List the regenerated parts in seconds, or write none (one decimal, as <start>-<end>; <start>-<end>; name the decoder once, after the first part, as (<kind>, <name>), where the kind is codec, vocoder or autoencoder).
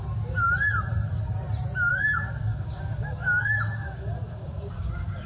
1.9-5.3 (codec, DAC)